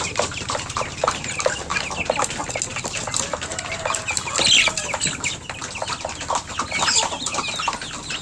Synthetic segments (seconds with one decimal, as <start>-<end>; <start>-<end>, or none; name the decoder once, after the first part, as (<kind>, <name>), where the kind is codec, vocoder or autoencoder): none